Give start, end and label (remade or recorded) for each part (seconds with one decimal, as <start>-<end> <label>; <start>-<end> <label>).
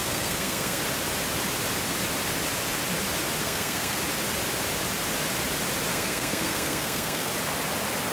0.0-0.8 remade; 0.8-3.4 recorded; 3.4-4.0 remade; 4.0-5.9 recorded; 5.9-7.3 remade; 7.3-8.1 recorded